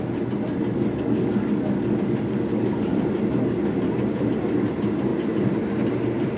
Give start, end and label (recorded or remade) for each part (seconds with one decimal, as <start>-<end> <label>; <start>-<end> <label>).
0.0-0.7 recorded; 0.7-3.0 remade; 3.0-6.4 recorded